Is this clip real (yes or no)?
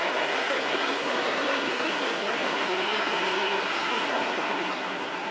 no